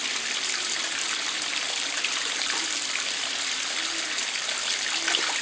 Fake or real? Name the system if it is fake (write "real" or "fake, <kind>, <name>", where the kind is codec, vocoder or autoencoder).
real